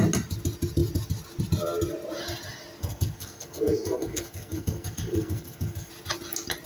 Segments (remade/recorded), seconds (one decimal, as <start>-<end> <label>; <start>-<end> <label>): 0.0-2.8 recorded; 2.8-5.9 remade; 5.9-6.7 recorded